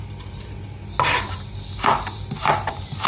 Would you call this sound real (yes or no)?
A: yes